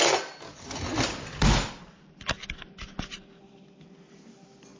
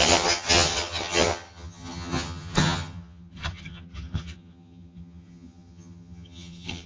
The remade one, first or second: second